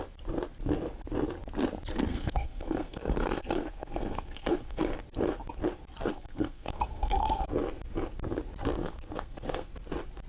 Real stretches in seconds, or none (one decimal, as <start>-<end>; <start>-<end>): 0.0-2.1; 4.8-6.1; 7.5-8.8; 9.7-10.3